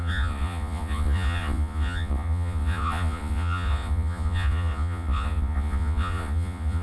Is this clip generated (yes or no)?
yes